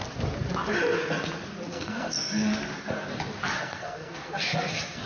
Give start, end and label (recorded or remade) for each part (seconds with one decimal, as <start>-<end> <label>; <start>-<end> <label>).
0.0-1.7 recorded; 1.7-2.5 remade; 2.5-3.6 recorded; 3.6-5.1 remade